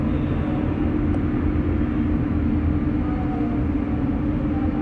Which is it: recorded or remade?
recorded